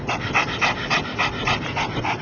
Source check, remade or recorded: recorded